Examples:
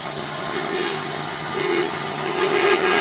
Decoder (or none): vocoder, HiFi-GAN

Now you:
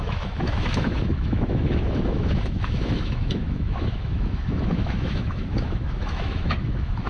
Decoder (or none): autoencoder, DAC-VAE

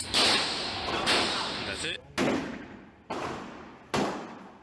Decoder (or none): none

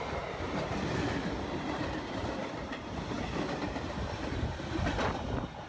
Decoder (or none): none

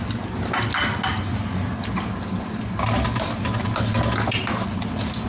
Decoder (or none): none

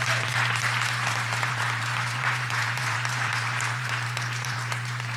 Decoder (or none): vocoder, BigVGAN v2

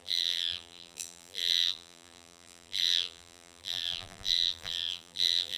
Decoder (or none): vocoder, BigVGAN v2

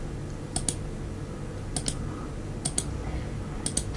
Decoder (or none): none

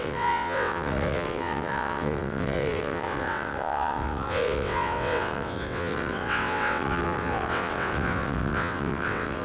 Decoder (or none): vocoder, WaveNeXt